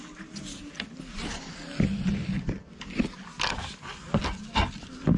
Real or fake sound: real